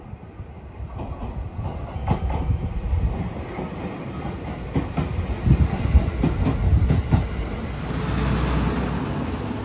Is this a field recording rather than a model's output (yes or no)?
yes